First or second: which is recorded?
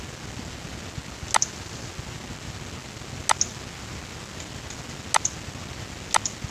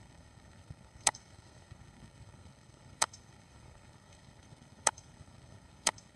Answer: first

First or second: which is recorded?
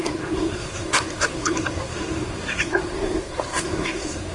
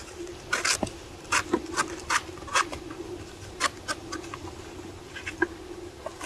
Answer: second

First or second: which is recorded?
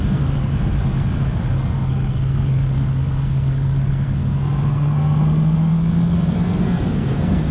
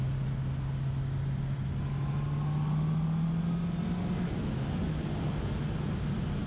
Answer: second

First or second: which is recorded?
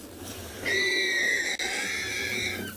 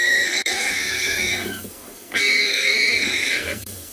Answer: first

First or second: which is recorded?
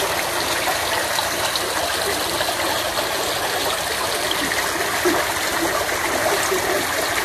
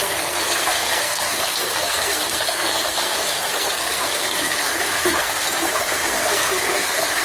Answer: first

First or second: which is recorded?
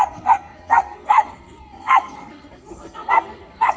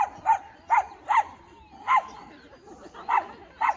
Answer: second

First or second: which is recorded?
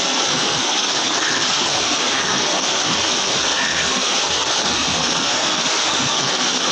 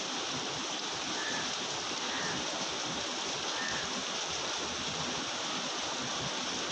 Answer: second